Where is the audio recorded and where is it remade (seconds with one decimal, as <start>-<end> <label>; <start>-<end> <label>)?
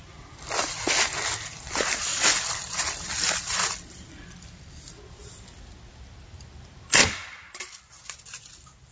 0.0-2.1 recorded; 2.1-4.9 remade; 4.9-7.0 recorded; 7.0-7.9 remade; 7.9-8.9 recorded